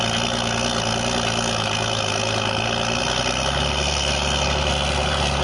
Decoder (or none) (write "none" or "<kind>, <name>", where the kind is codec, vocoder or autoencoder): none